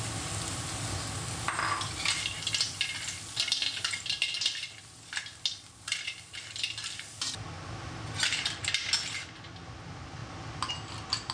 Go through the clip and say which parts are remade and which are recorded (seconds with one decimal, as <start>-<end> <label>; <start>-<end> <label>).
0.0-11.3 recorded

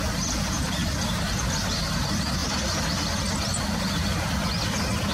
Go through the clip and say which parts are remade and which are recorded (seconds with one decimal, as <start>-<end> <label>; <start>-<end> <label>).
0.0-0.8 recorded; 0.8-1.5 remade; 1.5-2.4 recorded; 2.4-4.2 remade; 4.2-5.1 recorded

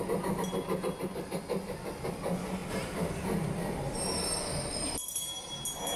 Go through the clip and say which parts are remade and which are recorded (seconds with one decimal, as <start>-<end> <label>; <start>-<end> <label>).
0.0-2.6 recorded; 2.6-4.4 remade; 4.4-6.0 recorded

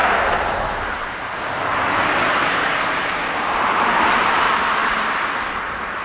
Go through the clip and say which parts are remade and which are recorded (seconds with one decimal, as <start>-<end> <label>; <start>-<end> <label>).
0.0-1.4 remade; 1.4-2.0 recorded; 2.0-3.8 remade; 3.8-6.0 recorded

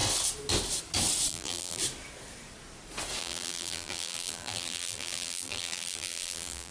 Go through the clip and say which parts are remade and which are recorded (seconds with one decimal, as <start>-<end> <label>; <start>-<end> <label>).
0.0-1.3 recorded; 1.3-1.8 remade; 1.8-3.2 recorded; 3.2-6.7 remade